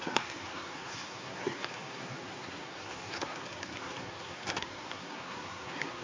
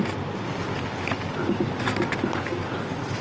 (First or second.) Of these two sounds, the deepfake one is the first